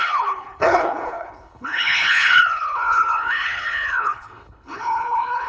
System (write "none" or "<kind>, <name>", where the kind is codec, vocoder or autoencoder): codec, HILCodec